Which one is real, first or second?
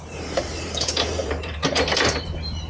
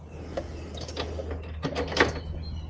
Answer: second